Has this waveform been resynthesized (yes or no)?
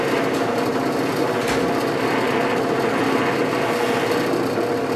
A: no